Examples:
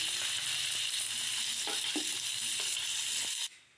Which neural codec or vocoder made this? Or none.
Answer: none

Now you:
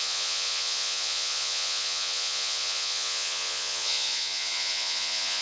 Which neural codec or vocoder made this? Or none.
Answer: vocoder, Vocos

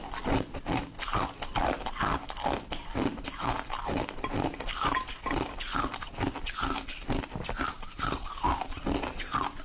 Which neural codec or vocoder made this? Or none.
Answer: none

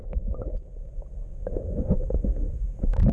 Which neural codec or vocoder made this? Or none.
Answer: none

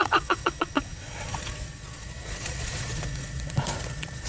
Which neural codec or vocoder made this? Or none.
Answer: vocoder, Vocos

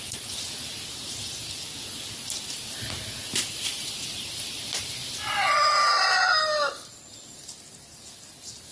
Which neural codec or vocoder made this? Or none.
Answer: none